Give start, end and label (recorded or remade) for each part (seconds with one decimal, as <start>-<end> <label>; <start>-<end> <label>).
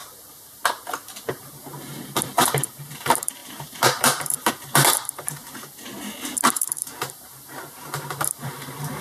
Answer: 0.0-1.3 recorded; 1.3-5.4 remade; 5.4-6.5 recorded; 6.5-9.0 remade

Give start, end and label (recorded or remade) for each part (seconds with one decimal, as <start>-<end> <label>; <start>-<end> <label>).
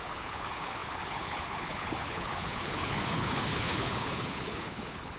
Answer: 0.0-5.2 remade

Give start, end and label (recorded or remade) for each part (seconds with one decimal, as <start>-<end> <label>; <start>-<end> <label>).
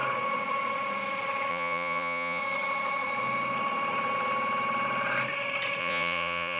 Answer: 0.0-1.5 recorded; 1.5-2.4 remade; 2.4-5.8 recorded; 5.8-6.6 remade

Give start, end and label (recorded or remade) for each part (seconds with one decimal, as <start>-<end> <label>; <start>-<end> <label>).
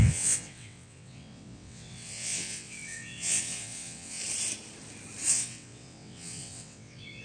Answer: 0.0-4.2 remade; 4.2-5.3 recorded; 5.3-7.2 remade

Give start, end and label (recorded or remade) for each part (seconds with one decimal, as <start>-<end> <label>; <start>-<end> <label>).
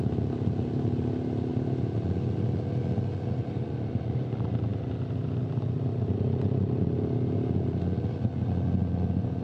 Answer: 0.0-9.4 recorded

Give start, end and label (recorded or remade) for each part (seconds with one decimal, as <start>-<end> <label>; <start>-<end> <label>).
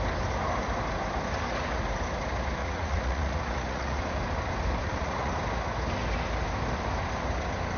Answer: 0.0-2.6 recorded; 2.6-4.0 remade; 4.0-4.8 recorded; 4.8-5.3 remade; 5.3-7.8 recorded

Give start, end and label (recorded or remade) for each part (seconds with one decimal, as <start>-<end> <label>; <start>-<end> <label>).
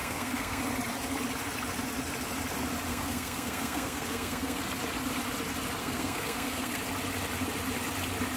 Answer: 0.0-0.6 remade; 0.6-2.9 recorded; 2.9-4.6 remade; 4.6-5.8 recorded; 5.8-6.8 remade; 6.8-8.4 recorded